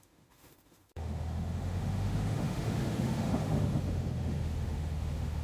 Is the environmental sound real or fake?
fake